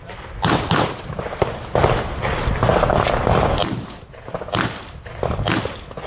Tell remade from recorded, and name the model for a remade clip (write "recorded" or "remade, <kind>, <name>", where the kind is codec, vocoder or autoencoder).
recorded